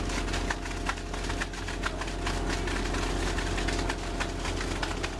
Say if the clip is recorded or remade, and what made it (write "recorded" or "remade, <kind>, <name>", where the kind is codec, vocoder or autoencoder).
recorded